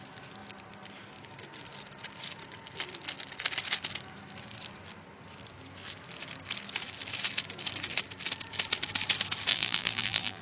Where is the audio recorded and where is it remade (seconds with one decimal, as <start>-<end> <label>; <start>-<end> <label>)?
0.0-9.5 recorded; 9.5-10.4 remade